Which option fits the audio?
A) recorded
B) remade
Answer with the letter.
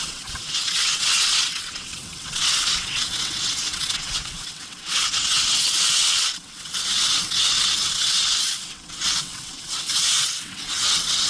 B